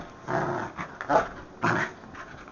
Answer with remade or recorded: recorded